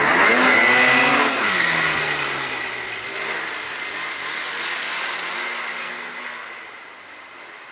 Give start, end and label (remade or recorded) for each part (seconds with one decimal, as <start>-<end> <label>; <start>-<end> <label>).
0.0-1.1 recorded; 1.1-2.1 remade; 2.1-5.8 recorded; 5.8-6.5 remade; 6.5-7.7 recorded